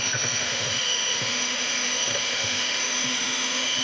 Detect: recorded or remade remade